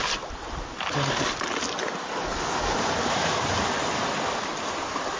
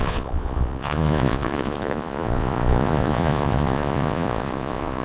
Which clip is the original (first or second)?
first